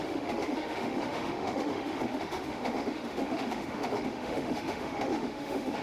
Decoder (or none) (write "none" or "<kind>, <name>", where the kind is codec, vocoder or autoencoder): autoencoder, DAC-VAE